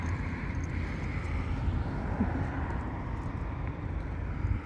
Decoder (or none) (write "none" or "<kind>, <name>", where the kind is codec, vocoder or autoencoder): none